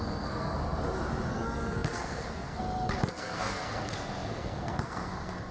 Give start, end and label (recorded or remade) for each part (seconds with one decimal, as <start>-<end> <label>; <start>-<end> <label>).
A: 0.0-0.6 remade; 0.6-1.3 recorded; 1.3-5.5 remade

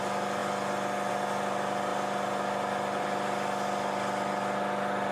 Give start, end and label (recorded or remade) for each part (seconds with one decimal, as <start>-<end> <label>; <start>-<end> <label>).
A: 0.0-5.1 recorded

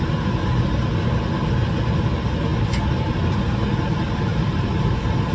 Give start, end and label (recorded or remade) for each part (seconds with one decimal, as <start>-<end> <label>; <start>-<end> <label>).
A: 0.0-4.3 recorded; 4.3-5.3 remade

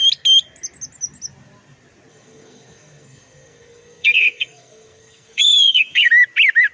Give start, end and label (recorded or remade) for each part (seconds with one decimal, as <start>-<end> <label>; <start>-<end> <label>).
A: 0.0-2.1 recorded; 2.1-6.1 remade; 6.1-6.7 recorded

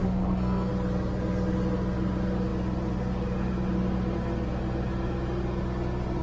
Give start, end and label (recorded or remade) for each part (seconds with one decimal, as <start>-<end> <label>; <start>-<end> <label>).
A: 0.0-0.7 remade; 0.7-6.2 recorded

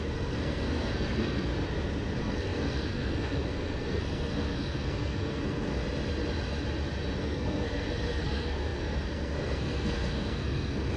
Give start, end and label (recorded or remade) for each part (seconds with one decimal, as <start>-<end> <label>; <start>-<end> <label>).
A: 0.0-1.5 remade; 1.5-2.2 recorded; 2.2-5.8 remade; 5.8-7.2 recorded; 7.2-11.0 remade

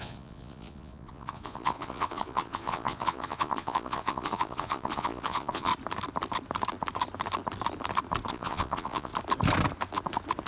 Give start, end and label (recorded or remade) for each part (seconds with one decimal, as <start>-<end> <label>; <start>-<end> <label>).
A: 0.0-5.7 remade; 5.7-8.3 recorded; 8.3-9.1 remade; 9.1-10.5 recorded

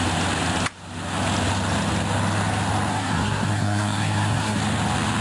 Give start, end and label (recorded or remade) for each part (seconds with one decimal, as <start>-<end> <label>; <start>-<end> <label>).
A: 0.0-2.9 recorded; 2.9-4.6 remade; 4.6-5.2 recorded